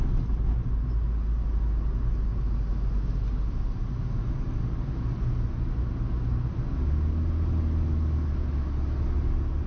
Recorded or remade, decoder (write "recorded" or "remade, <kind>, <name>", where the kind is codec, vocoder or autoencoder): recorded